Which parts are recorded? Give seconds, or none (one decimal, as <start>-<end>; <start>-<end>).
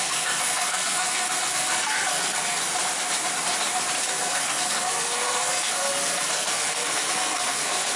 2.6-4.0